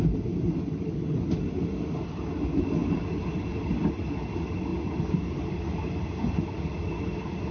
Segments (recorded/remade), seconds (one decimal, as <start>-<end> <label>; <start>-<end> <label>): 0.0-2.8 recorded; 2.8-3.9 remade; 3.9-7.5 recorded